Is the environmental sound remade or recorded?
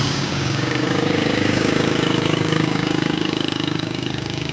remade